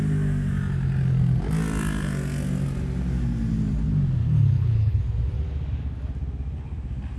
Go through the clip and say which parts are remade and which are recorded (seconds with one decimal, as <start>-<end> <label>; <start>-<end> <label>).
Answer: 0.0-4.2 recorded; 4.2-5.0 remade; 5.0-7.2 recorded